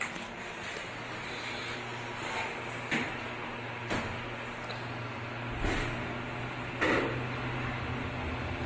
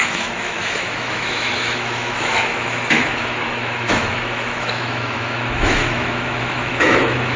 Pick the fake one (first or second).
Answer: second